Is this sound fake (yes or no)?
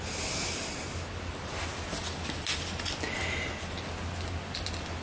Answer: no